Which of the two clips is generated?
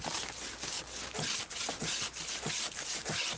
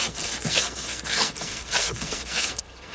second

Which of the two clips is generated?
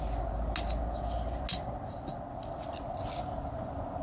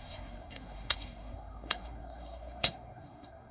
second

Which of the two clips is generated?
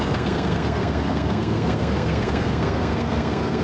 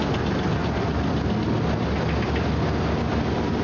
first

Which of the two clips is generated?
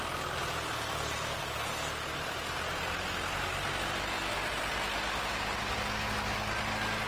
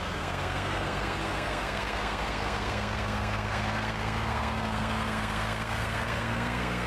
second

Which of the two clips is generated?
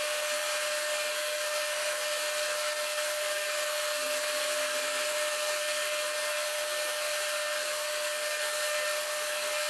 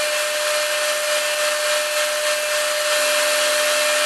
first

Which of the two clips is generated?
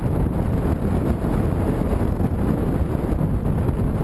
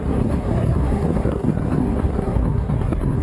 second